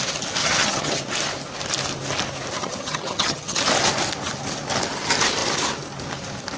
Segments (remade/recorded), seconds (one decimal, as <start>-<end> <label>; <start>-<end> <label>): 0.0-0.4 recorded; 0.4-1.0 remade; 1.0-2.6 recorded; 2.6-3.6 remade; 3.6-6.6 recorded